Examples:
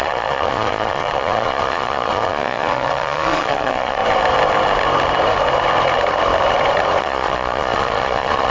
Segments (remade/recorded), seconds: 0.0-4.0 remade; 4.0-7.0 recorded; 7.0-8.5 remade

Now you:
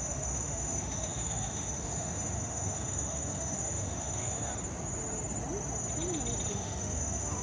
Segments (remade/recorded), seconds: 0.0-4.5 remade; 4.5-6.5 recorded; 6.5-7.4 remade

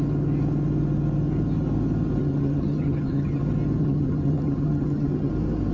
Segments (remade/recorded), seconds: 0.0-2.2 recorded; 2.2-3.4 remade; 3.4-3.8 recorded; 3.8-5.3 remade; 5.3-5.7 recorded

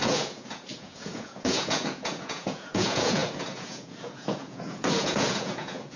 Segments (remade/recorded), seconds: 0.0-6.0 remade